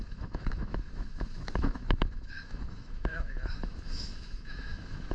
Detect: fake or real fake